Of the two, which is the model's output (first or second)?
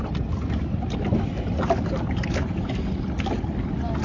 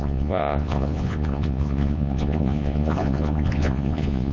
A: second